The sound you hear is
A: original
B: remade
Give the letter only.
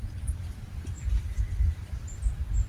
B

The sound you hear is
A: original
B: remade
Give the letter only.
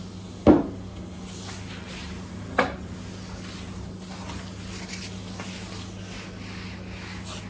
A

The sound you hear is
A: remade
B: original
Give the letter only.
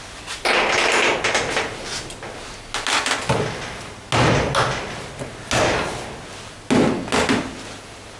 B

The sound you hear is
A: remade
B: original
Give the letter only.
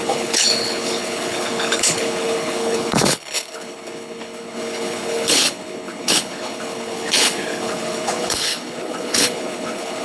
A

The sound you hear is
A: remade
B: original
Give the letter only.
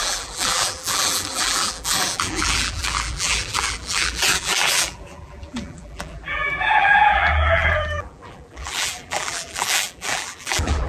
A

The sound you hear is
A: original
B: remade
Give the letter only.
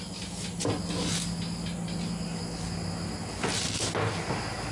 A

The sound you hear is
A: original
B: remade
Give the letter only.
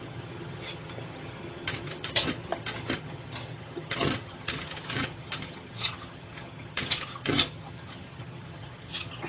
B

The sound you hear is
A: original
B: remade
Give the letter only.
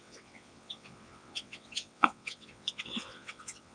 B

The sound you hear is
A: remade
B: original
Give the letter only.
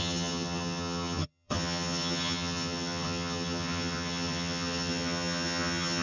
A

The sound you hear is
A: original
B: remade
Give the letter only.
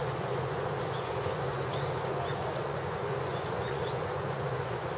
B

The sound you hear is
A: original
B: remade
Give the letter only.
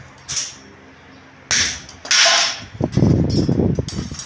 A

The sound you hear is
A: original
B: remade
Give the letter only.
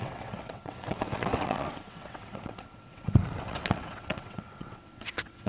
B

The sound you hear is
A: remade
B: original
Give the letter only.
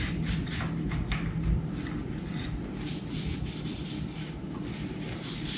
B